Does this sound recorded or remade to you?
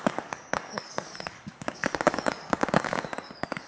remade